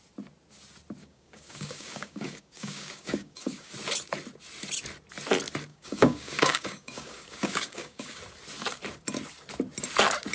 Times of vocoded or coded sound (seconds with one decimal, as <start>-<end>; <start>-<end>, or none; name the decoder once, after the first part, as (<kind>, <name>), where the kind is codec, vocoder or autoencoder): 1.0-3.7 (codec, DAC); 5.7-8.2